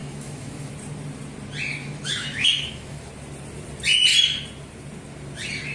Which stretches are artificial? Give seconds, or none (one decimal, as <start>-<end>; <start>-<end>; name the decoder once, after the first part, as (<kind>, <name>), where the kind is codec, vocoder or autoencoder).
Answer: 0.0-0.7 (autoencoder, DAC-VAE); 1.8-3.1